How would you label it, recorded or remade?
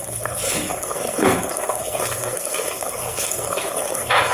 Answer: remade